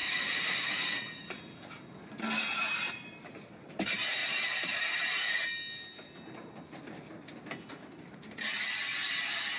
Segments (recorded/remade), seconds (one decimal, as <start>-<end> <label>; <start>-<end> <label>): 0.0-1.4 remade; 1.4-4.2 recorded; 4.2-5.4 remade; 5.4-9.6 recorded